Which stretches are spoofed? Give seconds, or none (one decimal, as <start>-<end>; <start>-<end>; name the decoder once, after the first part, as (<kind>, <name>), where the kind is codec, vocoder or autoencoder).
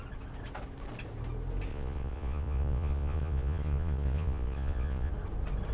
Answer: 1.7-5.1 (vocoder, Vocos)